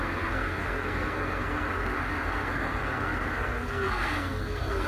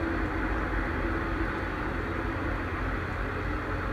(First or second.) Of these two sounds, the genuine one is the second